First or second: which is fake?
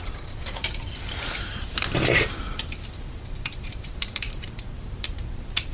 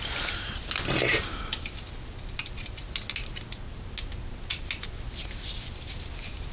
first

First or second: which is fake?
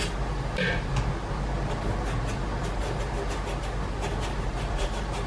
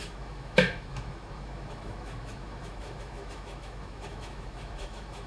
second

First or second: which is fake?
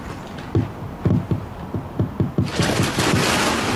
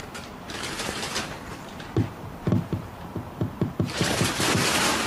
second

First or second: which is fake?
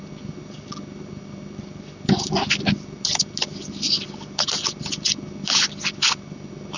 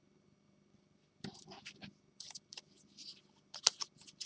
second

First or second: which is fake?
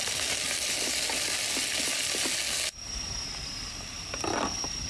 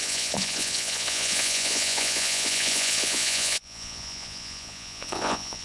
second